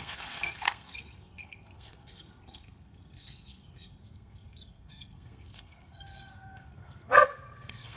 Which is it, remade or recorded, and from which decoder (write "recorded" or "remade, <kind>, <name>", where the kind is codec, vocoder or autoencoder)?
remade, codec, SNAC